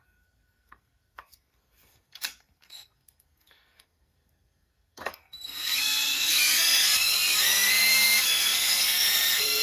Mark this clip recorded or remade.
remade